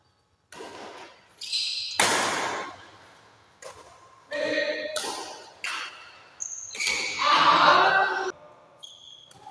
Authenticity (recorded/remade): recorded